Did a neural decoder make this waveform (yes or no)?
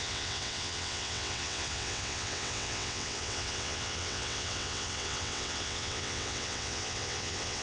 yes